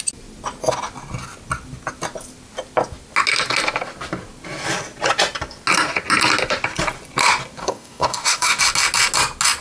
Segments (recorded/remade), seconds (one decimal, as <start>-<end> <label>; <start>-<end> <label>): 0.0-7.6 recorded; 7.6-8.6 remade; 8.6-9.6 recorded